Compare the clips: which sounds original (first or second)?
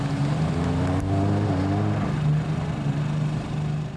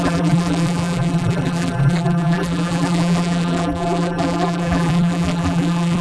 first